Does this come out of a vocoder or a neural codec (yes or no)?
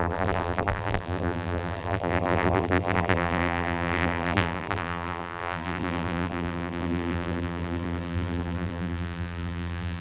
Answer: yes